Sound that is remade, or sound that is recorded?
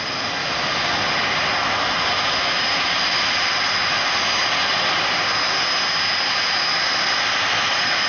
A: recorded